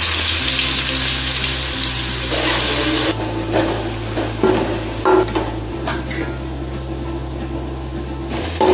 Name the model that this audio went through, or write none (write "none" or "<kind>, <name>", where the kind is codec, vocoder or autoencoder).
none